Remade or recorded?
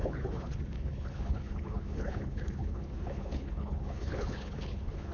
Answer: remade